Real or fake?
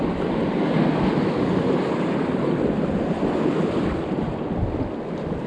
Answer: real